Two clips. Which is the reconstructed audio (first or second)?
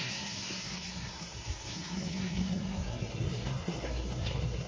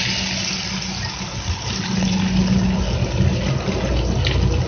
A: first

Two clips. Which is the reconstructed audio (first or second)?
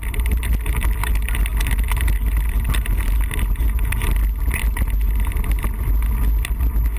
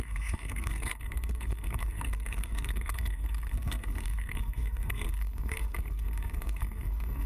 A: second